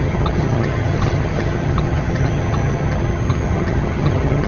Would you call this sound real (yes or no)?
no